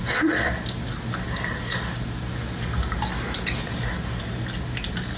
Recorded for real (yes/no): yes